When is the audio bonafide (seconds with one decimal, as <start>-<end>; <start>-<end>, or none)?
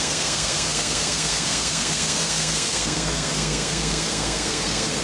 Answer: none